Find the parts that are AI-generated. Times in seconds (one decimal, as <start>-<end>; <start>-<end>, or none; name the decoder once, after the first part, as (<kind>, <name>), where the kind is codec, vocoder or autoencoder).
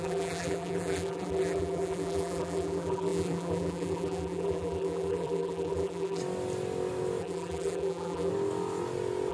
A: 0.0-6.2 (vocoder, BigVGAN v2); 7.2-8.3